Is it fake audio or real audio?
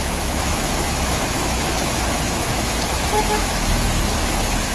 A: fake